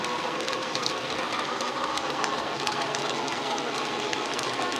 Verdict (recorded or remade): remade